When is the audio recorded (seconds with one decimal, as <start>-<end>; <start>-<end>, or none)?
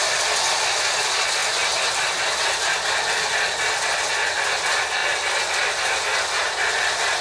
0.0-7.2